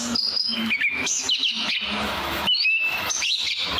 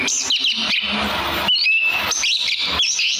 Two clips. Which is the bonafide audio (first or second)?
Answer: second